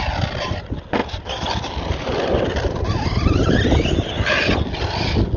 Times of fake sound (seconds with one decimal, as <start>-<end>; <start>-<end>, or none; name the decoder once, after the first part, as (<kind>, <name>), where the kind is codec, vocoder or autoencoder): none